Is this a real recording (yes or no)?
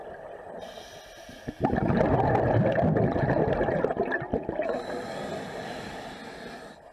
yes